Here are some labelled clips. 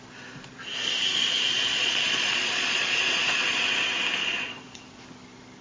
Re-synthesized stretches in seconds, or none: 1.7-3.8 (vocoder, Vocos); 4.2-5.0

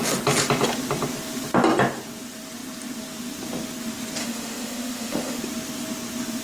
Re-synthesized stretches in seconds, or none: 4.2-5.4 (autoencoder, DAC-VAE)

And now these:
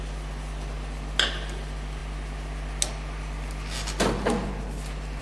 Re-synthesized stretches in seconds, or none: none

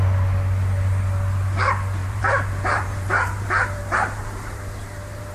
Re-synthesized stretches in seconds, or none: 2.0-5.3 (vocoder, BigVGAN v2)

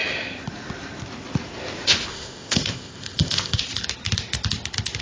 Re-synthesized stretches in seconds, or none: 2.1-3.6 (codec, ZipCodec)